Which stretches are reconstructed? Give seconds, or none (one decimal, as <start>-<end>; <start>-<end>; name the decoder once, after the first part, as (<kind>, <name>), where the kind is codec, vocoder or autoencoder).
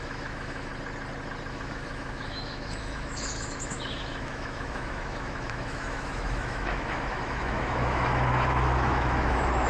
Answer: 0.0-0.7 (autoencoder, DAC-VAE); 1.5-9.7